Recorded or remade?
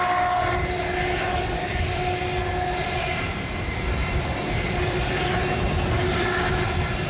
recorded